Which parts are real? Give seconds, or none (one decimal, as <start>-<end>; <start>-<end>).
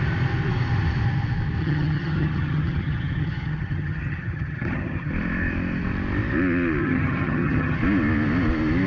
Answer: 0.0-1.6; 5.1-6.8; 7.8-8.9